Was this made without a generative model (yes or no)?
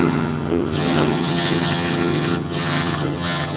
no